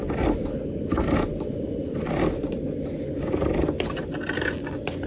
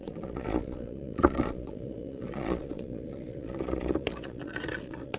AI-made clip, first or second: second